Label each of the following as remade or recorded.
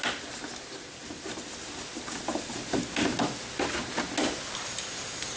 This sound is recorded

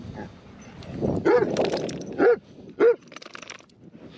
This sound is recorded